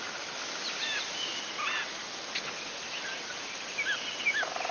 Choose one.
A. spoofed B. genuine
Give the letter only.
B